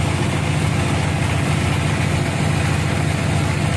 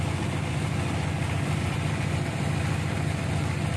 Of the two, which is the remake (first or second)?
second